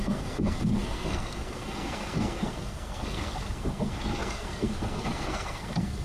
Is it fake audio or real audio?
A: fake